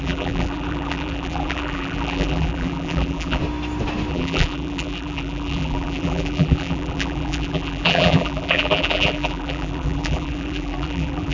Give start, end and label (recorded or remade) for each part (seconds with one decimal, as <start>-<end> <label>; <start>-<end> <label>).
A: 0.0-3.4 remade; 3.4-4.1 recorded; 4.1-11.3 remade